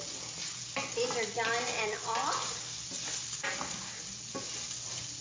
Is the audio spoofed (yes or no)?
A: no